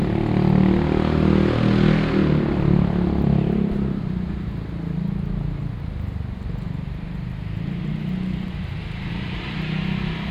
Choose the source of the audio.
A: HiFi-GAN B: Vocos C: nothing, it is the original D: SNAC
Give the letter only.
C